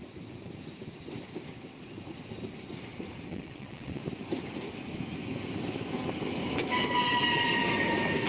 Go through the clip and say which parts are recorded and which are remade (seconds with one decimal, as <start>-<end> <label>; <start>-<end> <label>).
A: 0.0-3.3 recorded; 3.3-4.0 remade; 4.0-8.3 recorded